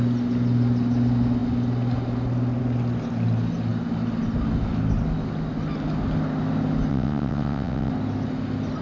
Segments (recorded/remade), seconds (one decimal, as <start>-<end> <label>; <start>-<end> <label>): 0.0-6.9 recorded; 6.9-7.9 remade; 7.9-8.8 recorded